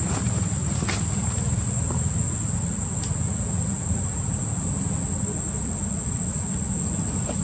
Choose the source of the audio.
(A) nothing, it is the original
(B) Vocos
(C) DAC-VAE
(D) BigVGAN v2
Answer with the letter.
A